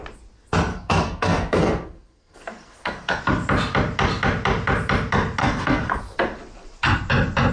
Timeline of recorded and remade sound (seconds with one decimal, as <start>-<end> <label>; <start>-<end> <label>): 0.0-0.7 recorded; 0.7-3.2 remade; 3.2-5.4 recorded; 5.4-6.0 remade; 6.0-7.5 recorded